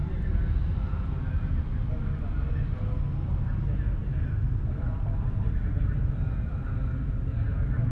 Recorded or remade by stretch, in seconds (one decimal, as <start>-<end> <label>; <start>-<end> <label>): 0.0-7.9 recorded